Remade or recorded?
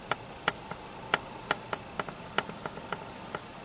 recorded